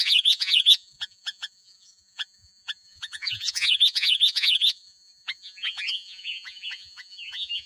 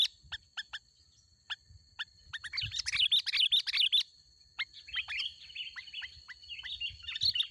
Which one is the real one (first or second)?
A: second